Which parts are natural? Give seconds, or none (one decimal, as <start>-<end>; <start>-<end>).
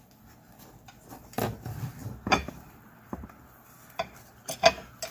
0.0-2.0; 4.5-5.1